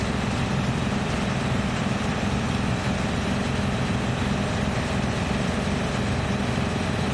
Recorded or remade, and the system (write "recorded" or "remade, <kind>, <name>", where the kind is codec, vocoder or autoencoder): recorded